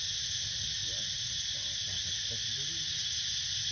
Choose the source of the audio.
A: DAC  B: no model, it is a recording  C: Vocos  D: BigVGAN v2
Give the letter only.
B